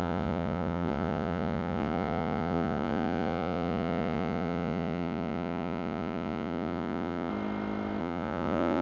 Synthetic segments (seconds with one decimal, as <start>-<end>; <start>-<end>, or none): 0.0-7.3; 8.0-8.8